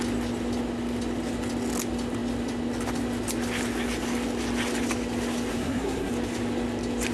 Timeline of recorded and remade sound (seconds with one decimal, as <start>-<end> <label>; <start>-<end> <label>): 0.0-5.5 recorded; 5.5-6.1 remade; 6.1-7.1 recorded

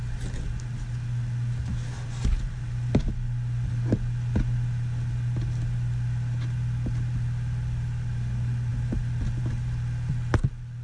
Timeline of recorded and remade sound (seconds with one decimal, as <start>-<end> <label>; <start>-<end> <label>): 0.0-10.8 recorded

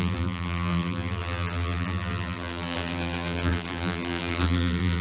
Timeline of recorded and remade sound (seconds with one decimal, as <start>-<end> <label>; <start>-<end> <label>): 0.0-5.0 remade

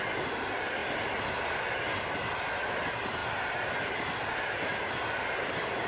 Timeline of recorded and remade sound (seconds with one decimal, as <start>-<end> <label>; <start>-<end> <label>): 0.0-5.9 recorded

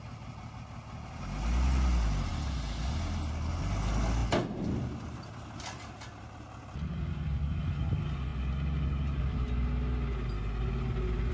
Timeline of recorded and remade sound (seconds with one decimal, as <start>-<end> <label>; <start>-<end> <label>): 0.0-11.3 recorded

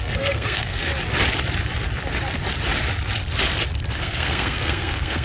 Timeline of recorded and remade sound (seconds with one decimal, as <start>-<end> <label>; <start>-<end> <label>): 0.0-0.9 remade; 0.9-4.0 recorded; 4.0-5.2 remade

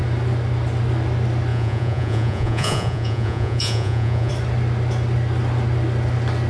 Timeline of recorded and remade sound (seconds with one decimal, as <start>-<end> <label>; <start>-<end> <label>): 0.0-1.5 recorded; 1.5-4.3 remade; 4.3-6.5 recorded

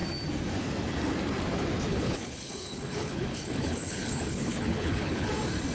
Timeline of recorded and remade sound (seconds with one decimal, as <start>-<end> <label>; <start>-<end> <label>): 0.0-1.9 recorded; 1.9-5.3 remade; 5.3-5.7 recorded